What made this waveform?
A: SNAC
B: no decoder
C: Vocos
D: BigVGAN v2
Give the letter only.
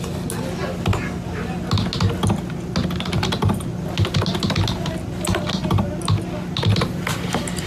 B